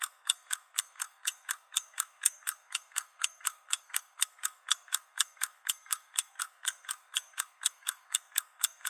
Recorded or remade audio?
remade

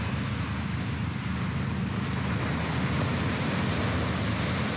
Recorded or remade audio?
recorded